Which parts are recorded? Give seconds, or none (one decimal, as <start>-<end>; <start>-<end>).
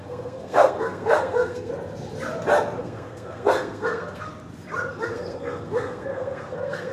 1.7-2.8; 4.3-4.9